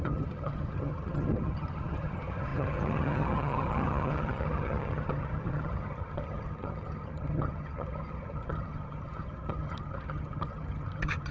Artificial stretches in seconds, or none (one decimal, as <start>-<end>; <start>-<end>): 0.0-11.3